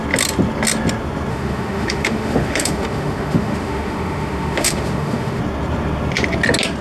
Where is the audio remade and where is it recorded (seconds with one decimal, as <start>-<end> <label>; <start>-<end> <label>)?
0.0-1.3 recorded; 1.3-5.4 remade; 5.4-6.8 recorded